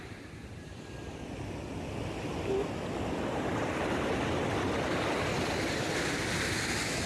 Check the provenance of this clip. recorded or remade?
recorded